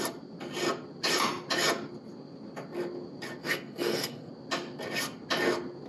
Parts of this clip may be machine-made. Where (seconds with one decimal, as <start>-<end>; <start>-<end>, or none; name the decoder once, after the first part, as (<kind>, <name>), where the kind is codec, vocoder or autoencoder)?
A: 3.4-4.3 (codec, SNAC)